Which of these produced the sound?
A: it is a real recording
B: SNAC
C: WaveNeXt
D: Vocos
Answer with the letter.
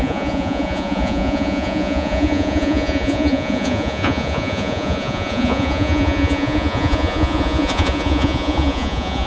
D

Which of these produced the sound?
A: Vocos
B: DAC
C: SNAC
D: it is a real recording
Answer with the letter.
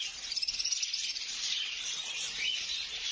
D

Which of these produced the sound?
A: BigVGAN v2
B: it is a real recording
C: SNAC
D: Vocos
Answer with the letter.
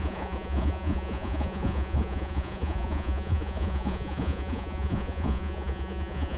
D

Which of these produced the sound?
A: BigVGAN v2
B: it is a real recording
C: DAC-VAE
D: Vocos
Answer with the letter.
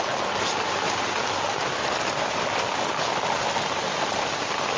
B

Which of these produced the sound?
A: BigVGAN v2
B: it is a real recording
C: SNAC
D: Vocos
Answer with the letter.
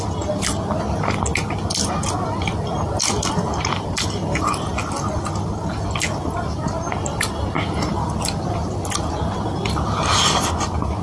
B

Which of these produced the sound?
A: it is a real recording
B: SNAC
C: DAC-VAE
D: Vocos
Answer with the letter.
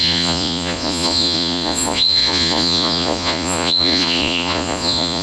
D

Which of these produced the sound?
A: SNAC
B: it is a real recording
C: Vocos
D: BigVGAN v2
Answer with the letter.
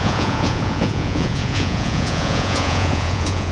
C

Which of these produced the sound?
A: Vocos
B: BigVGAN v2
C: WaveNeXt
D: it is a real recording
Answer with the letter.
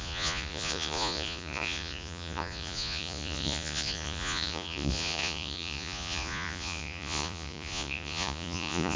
A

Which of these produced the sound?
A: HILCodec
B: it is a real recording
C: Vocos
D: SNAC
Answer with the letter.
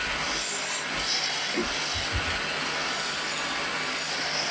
B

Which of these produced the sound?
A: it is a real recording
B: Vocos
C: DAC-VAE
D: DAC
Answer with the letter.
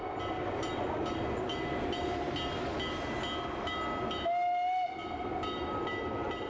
A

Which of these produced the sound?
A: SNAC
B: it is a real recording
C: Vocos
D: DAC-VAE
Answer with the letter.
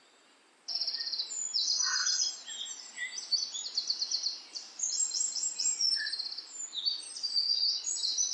B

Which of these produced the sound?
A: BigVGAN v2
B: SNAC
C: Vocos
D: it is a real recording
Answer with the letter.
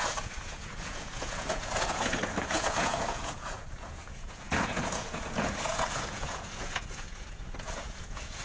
C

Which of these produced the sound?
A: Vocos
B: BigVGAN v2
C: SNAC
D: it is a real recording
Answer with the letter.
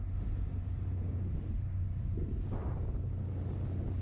D